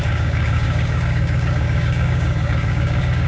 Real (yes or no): no